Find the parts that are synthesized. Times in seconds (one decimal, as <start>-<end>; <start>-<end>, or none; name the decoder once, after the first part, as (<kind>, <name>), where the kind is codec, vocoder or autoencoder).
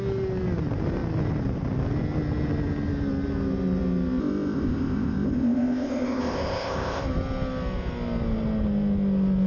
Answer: 4.2-7.0 (codec, ZipCodec)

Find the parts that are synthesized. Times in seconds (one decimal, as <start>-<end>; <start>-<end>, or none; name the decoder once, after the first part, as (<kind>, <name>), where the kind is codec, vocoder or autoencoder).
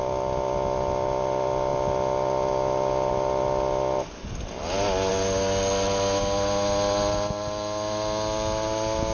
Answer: none